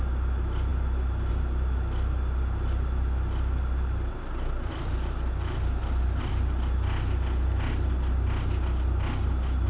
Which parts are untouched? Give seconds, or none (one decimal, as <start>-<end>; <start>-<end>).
0.0-5.8; 6.3-9.7

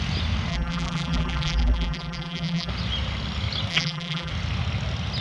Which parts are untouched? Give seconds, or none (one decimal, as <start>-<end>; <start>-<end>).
0.0-0.5; 2.7-3.7; 4.3-5.2